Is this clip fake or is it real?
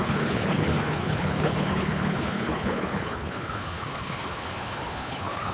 fake